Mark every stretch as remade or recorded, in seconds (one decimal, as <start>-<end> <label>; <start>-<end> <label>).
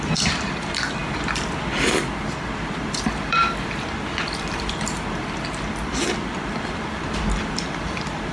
0.0-1.0 remade; 1.0-1.9 recorded; 1.9-8.3 remade